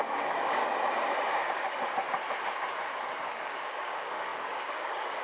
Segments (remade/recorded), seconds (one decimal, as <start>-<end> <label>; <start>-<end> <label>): 0.0-0.6 remade; 0.6-1.3 recorded; 1.3-1.8 remade; 1.8-3.1 recorded; 3.1-5.2 remade